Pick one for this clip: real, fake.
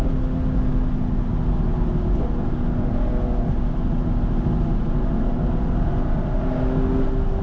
real